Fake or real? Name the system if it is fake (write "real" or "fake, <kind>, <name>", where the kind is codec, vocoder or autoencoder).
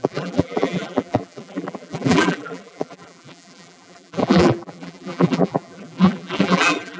fake, vocoder, BigVGAN v2